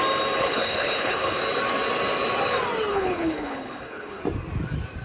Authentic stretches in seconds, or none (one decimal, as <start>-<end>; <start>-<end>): 0.0-0.4; 1.4-2.9; 4.2-5.0